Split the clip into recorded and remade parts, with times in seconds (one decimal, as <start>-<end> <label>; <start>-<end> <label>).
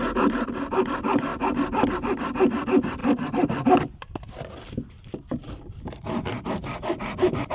0.0-7.5 recorded